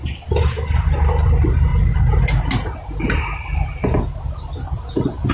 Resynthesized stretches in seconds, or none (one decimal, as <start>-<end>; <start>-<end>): none